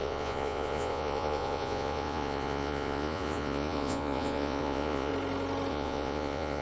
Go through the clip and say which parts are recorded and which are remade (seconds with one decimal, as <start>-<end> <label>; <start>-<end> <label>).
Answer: 0.0-5.1 remade; 5.1-5.7 recorded; 5.7-6.6 remade